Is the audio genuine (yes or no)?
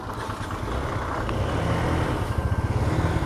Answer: yes